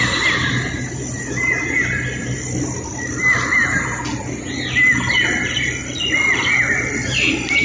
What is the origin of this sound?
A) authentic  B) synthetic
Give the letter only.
A